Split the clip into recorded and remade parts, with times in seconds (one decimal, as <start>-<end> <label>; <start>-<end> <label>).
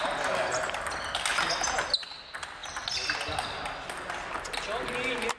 0.0-5.4 recorded